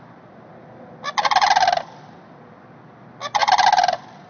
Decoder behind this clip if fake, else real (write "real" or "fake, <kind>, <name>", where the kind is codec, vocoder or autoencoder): real